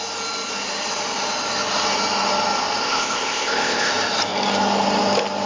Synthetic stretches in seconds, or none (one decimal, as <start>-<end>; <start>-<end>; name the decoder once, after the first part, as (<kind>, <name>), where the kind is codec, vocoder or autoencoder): 2.8-3.9 (codec, ZipCodec)